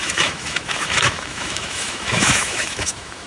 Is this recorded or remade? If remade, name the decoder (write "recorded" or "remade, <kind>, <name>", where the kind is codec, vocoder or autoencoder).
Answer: remade, autoencoder, DAC-VAE